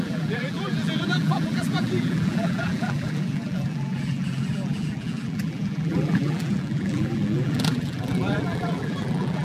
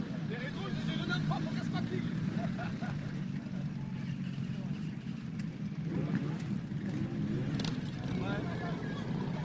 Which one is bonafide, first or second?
second